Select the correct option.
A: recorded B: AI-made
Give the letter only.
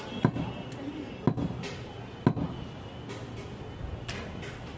A